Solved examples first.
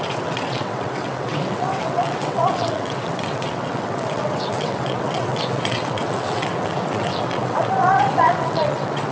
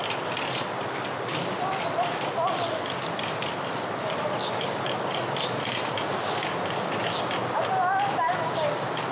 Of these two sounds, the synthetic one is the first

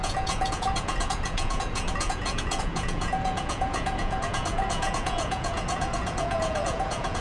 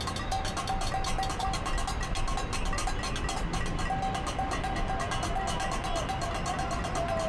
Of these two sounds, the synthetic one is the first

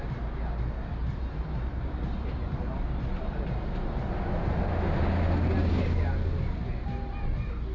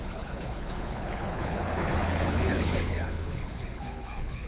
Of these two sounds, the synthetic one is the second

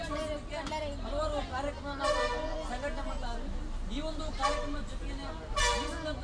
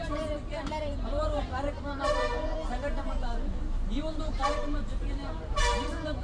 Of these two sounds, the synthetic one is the second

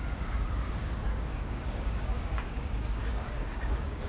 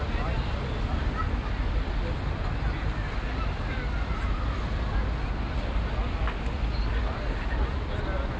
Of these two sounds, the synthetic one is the first